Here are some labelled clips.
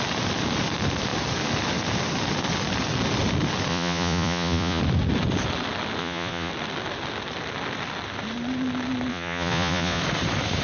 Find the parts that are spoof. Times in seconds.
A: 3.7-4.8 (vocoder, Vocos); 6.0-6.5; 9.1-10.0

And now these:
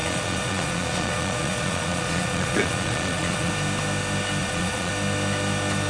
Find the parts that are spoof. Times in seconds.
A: 0.0-3.5 (vocoder, Vocos); 4.4-4.9

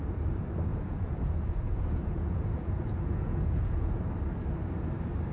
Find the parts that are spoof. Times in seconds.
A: 0.7-3.9 (vocoder, Vocos)